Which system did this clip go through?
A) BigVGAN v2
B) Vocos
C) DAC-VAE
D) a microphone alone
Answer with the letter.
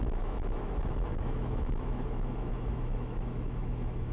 C